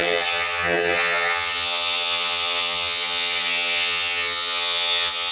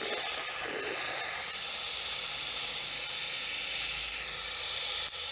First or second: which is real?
second